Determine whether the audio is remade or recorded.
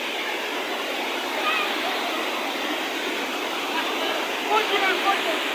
recorded